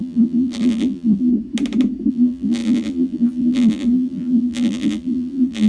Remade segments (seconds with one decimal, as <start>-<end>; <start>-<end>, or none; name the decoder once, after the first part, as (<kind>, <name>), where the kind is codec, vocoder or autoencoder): 0.0-1.3 (vocoder, BigVGAN v2); 2.1-5.7